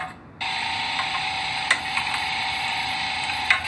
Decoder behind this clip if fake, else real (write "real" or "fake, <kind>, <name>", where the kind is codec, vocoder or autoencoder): real